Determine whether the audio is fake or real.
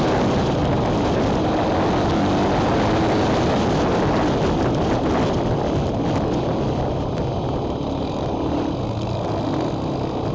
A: real